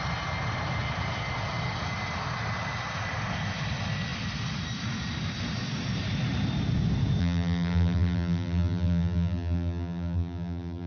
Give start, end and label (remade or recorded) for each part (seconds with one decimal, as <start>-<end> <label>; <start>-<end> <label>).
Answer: 0.0-7.2 recorded; 7.2-10.9 remade